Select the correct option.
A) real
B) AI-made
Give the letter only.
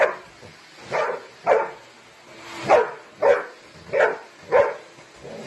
A